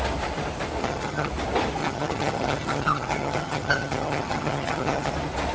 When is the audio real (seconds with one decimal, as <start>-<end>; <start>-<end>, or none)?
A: 0.0-0.8; 1.3-1.8; 5.1-5.5